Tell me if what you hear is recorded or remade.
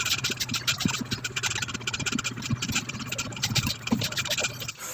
recorded